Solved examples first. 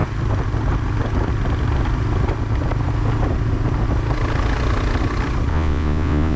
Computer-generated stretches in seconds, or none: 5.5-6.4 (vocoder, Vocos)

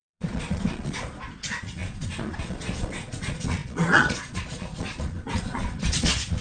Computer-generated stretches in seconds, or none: 0.0-6.4 (vocoder, Vocos)

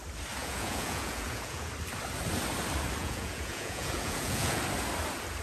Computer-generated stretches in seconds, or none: 0.4-1.7 (vocoder, Vocos); 3.0-4.6

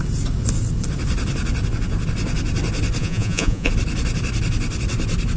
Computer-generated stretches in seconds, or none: 3.0-3.7 (vocoder, Vocos)

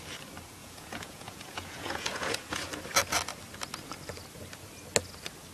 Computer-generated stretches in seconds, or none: 0.6-2.6 (vocoder, Vocos)

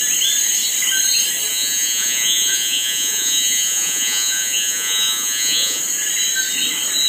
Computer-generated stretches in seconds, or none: 1.5-5.8 (vocoder, Vocos)